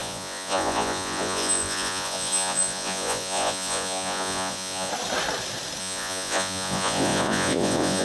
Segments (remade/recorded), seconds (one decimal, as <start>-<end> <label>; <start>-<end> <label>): 0.0-4.9 remade; 4.9-5.8 recorded; 5.8-8.0 remade